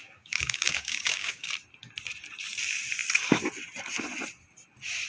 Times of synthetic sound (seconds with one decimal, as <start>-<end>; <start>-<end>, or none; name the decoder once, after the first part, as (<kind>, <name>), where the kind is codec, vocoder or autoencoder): 0.0-1.5 (codec, DAC)